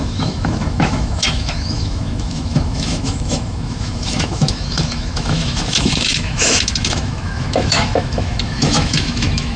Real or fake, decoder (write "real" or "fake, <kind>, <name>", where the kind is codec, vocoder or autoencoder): fake, autoencoder, DAC-VAE